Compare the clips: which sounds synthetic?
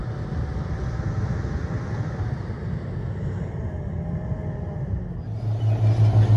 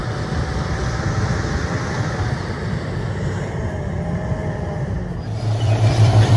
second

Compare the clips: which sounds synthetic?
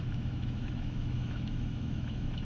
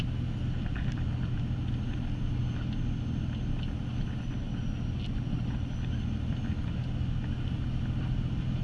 first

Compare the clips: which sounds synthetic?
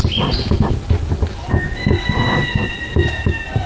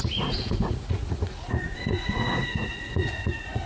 second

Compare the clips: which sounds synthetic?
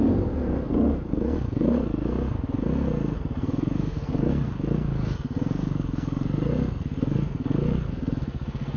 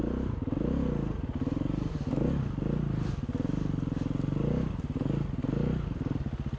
first